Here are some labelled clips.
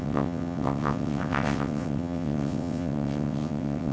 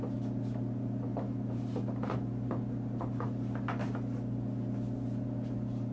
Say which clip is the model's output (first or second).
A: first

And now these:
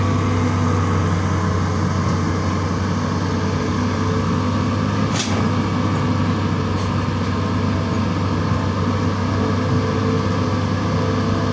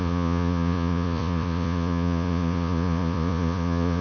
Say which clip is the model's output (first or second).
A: second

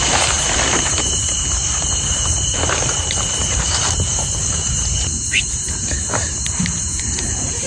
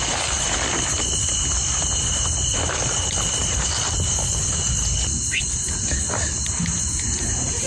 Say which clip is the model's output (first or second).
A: first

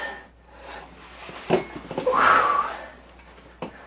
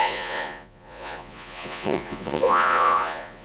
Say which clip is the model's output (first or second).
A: second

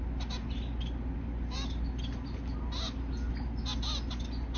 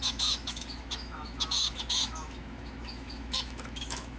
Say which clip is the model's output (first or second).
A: second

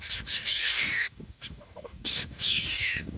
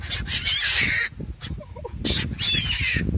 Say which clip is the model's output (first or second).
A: first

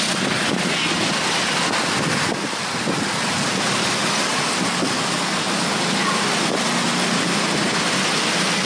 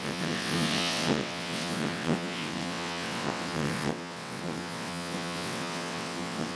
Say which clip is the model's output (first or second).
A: second